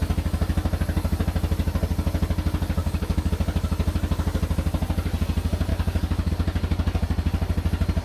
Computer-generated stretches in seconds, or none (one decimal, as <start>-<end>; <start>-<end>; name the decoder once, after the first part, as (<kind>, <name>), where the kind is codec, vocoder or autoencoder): 2.8-3.3 (codec, DAC); 5.7-6.3